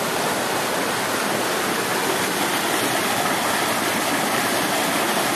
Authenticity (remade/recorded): recorded